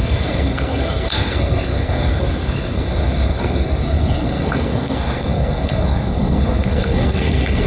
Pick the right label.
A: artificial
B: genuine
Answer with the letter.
A